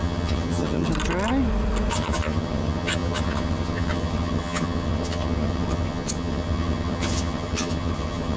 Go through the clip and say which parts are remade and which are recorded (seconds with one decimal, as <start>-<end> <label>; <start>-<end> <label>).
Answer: 0.0-0.9 remade; 0.9-1.9 recorded; 1.9-8.4 remade